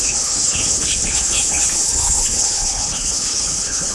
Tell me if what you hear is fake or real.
fake